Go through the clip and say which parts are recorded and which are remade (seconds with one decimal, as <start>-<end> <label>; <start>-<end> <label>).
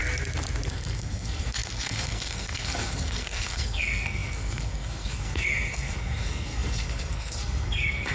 0.0-0.7 recorded; 0.7-8.1 remade